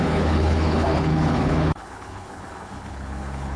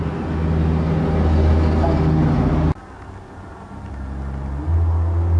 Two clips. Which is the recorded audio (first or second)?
second